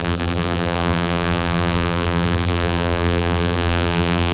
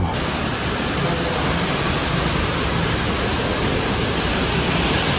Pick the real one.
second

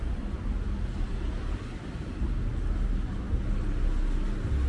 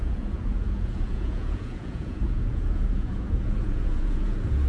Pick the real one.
first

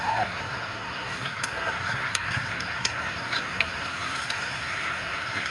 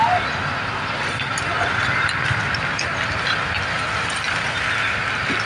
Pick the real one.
second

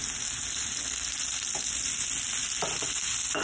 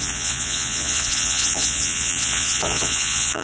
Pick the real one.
first